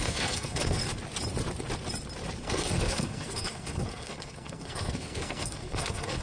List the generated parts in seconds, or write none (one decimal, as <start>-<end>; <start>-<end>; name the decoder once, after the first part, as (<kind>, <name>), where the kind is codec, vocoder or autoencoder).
0.0-0.8 (codec, SNAC); 2.4-6.2

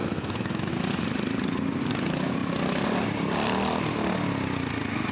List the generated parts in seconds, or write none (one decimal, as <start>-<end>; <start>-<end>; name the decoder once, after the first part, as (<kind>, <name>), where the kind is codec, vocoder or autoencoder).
0.0-0.7 (autoencoder, DAC-VAE)

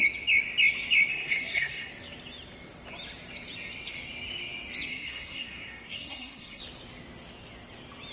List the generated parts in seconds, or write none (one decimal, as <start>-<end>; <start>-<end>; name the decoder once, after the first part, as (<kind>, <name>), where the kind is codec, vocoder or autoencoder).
1.1-1.9 (codec, SNAC); 4.9-6.6

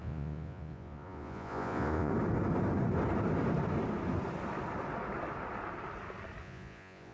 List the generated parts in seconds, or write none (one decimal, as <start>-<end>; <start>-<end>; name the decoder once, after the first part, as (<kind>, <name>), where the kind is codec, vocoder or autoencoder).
0.0-2.1 (vocoder, Vocos); 6.4-7.1

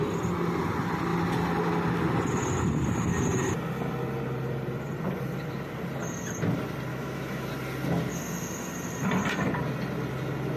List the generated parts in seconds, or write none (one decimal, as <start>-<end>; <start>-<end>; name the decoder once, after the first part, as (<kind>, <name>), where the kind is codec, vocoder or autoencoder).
6.9-7.5 (autoencoder, DAC-VAE)

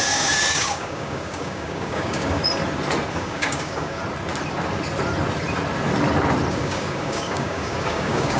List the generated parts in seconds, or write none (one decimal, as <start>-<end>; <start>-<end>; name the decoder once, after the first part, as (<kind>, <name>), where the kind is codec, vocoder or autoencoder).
0.0-2.4 (codec, DAC); 3.1-4.0; 6.5-8.4

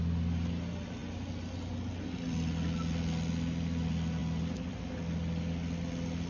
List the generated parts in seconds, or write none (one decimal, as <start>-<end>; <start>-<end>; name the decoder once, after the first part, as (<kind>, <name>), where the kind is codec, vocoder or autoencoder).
none

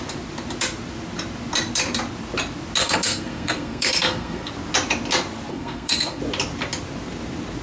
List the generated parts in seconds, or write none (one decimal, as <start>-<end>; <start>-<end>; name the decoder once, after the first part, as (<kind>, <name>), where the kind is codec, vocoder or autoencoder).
2.8-4.5 (codec, SNAC); 5.5-6.2